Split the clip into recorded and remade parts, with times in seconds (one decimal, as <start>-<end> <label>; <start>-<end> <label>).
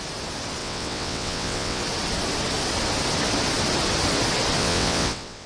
0.0-0.6 recorded; 0.6-1.8 remade; 1.8-4.6 recorded; 4.6-5.5 remade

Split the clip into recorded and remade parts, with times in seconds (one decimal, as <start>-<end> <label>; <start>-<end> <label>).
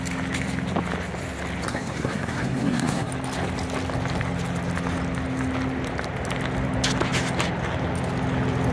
0.0-1.7 recorded; 1.7-3.1 remade; 3.1-8.7 recorded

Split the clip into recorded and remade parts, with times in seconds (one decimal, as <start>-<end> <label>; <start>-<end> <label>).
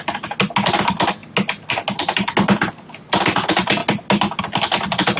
0.0-5.2 recorded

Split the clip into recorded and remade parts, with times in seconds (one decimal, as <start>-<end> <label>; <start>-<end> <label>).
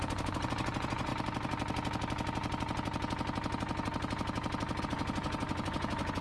0.0-1.1 remade; 1.1-4.8 recorded; 4.8-6.2 remade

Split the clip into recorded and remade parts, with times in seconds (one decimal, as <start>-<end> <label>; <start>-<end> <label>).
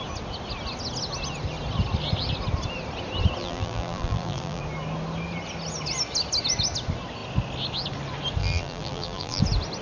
0.0-3.4 recorded; 3.4-4.6 remade; 4.6-8.4 recorded; 8.4-9.4 remade; 9.4-9.8 recorded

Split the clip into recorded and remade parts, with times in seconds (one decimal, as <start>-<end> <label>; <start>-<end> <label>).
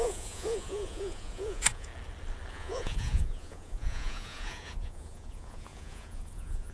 0.0-1.9 remade; 1.9-2.5 recorded; 2.5-6.7 remade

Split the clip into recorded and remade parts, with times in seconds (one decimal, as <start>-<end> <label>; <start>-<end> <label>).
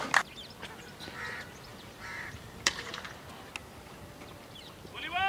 0.0-1.7 recorded; 1.7-2.9 remade; 2.9-5.3 recorded